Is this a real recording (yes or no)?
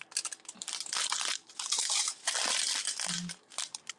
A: yes